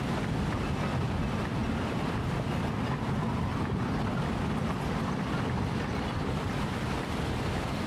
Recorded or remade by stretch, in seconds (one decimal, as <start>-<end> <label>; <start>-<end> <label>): 0.0-1.6 recorded; 1.6-2.6 remade; 2.6-7.9 recorded